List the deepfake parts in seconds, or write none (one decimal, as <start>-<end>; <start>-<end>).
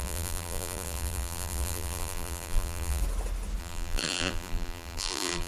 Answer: 0.0-3.0; 3.6-5.5